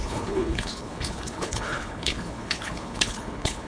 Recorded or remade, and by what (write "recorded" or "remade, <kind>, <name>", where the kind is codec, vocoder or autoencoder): remade, codec, HILCodec